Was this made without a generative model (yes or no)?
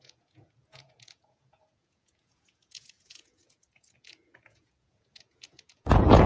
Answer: no